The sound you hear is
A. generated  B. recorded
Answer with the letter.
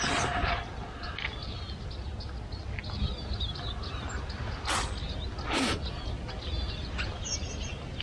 B